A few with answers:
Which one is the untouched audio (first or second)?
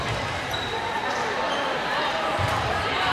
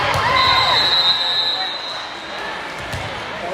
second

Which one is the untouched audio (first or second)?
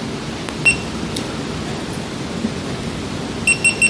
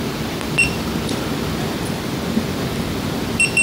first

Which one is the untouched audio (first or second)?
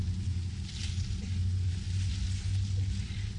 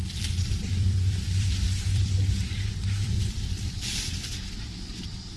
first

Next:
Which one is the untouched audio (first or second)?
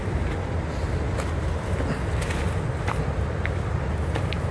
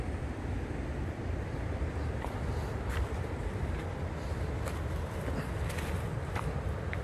first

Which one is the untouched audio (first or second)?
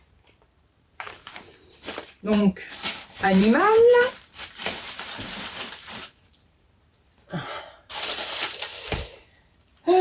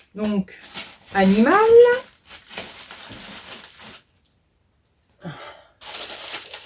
second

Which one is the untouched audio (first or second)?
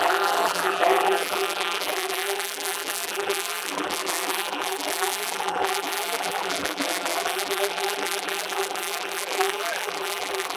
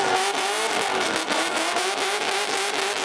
second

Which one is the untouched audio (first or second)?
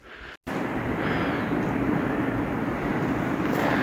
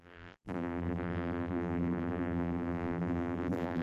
first